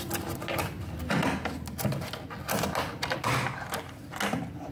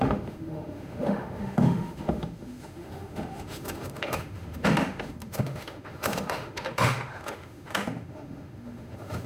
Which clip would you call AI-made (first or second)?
second